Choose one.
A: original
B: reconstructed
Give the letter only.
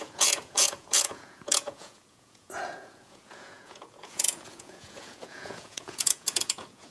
B